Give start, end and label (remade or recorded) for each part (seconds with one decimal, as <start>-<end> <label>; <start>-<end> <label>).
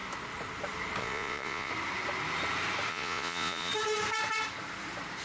0.0-1.0 recorded; 1.0-1.7 remade; 1.7-2.9 recorded; 2.9-3.7 remade; 3.7-5.2 recorded